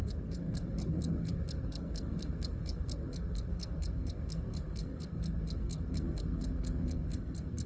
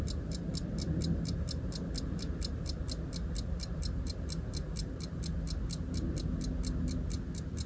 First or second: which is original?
second